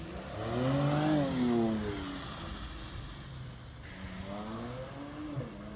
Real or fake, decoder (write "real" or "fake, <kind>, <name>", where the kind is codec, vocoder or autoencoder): real